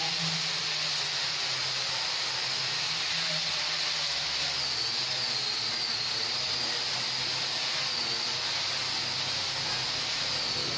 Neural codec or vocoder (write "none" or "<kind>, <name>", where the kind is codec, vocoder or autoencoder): none